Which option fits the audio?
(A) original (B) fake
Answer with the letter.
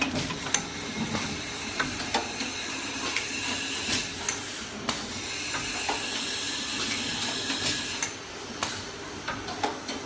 A